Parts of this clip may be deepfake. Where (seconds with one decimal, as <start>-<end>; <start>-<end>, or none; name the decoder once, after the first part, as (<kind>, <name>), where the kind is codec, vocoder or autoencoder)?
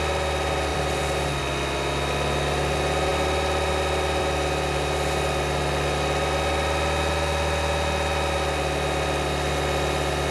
0.7-1.4 (vocoder, BigVGAN v2)